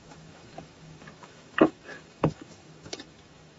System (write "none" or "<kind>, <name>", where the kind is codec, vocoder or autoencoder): autoencoder, DAC-VAE